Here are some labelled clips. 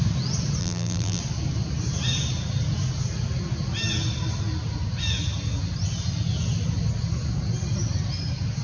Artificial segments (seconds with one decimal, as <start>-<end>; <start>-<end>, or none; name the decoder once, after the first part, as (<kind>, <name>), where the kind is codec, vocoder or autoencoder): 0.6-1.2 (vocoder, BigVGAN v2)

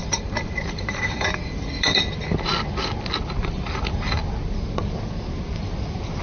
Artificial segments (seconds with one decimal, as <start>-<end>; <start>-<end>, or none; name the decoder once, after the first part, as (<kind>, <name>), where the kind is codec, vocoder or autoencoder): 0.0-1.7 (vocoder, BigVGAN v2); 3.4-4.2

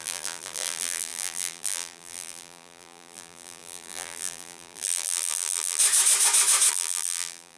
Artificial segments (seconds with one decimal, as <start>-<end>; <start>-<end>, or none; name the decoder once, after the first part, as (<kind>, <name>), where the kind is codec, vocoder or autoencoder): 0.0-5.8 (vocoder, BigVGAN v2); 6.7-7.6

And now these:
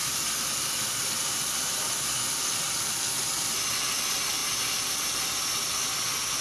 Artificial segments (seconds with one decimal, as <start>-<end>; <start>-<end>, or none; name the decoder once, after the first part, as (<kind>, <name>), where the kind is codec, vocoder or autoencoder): 0.0-3.8 (vocoder, BigVGAN v2)

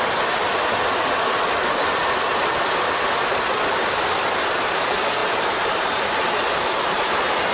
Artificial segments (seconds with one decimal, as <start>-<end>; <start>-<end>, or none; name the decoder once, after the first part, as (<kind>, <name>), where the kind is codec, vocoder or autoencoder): none

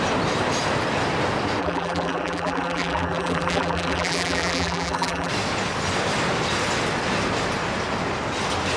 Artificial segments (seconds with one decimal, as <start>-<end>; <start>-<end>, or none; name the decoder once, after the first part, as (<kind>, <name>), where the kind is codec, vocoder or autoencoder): 1.6-5.3 (vocoder, BigVGAN v2)